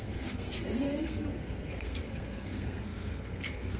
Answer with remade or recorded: remade